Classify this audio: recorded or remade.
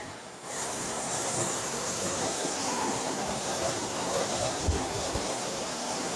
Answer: remade